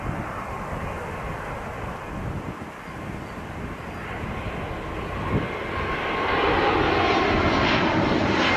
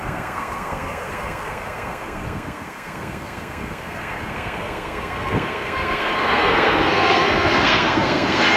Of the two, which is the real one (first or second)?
first